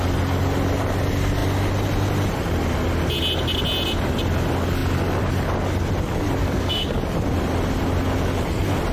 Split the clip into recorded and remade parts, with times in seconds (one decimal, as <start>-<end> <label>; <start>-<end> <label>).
0.0-6.4 recorded; 6.4-7.0 remade; 7.0-8.9 recorded